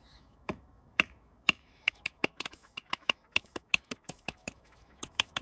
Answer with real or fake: fake